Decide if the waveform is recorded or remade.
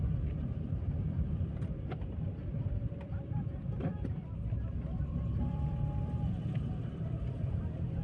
remade